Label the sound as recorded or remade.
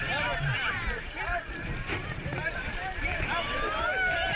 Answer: remade